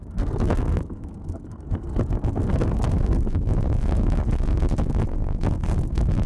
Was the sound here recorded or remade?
remade